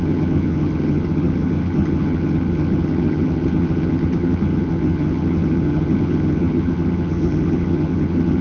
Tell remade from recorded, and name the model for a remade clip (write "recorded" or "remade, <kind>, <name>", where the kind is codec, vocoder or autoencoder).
remade, vocoder, HiFi-GAN